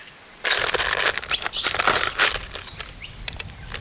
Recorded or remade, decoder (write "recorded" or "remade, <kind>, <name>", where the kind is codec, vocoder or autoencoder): recorded